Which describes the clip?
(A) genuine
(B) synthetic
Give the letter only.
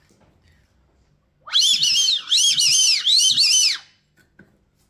A